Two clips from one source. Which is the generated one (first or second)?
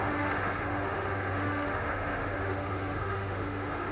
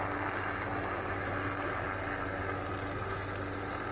first